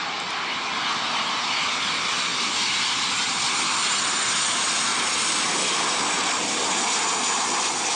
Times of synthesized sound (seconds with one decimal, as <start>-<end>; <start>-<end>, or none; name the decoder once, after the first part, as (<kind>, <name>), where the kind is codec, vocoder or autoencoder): none